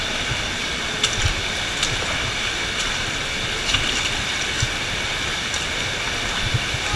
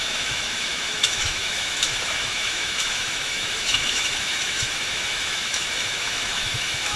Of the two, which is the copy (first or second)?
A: second